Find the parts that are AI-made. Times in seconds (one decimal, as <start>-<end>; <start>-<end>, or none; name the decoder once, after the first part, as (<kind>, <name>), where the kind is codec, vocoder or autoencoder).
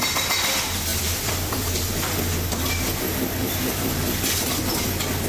0.9-2.0 (vocoder, BigVGAN v2); 3.4-4.5